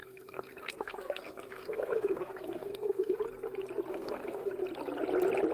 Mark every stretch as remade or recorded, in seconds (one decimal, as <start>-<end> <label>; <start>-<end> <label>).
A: 0.0-3.2 remade; 3.2-3.9 recorded; 3.9-4.5 remade; 4.5-5.5 recorded